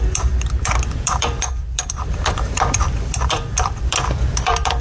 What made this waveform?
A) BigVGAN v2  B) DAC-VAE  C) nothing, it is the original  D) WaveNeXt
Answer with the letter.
A